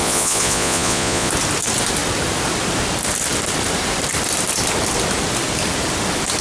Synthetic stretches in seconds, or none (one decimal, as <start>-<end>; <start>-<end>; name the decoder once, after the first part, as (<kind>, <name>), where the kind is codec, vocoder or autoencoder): 0.0-1.3 (vocoder, Vocos)